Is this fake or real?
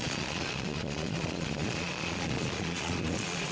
fake